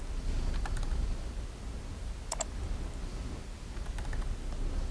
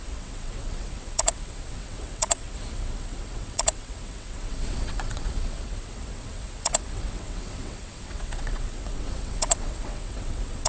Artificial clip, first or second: second